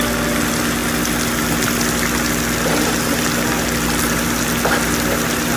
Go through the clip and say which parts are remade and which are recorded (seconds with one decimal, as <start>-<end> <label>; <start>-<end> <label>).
0.0-5.6 recorded